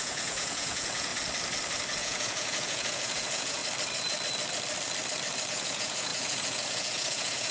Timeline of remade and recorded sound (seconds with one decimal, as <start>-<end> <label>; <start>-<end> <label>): 0.0-1.1 remade; 1.1-2.0 recorded; 2.0-3.6 remade; 3.6-5.5 recorded; 5.5-7.5 remade